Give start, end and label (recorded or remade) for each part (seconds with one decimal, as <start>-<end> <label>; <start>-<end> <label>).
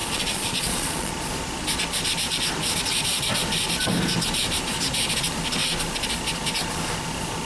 0.0-1.1 remade; 1.1-7.4 recorded